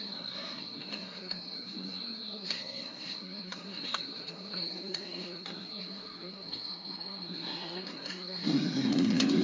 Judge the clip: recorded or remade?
remade